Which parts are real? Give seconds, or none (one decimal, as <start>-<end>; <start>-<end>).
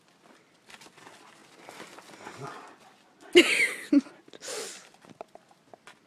0.0-6.1